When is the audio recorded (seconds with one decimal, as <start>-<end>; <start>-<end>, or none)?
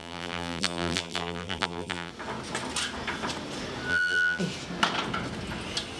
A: 2.1-3.9; 4.4-6.0